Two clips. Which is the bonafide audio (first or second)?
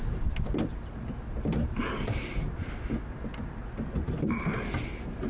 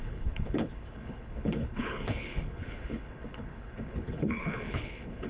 first